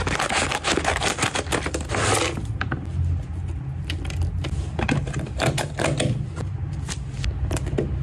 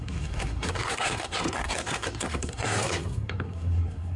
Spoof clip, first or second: second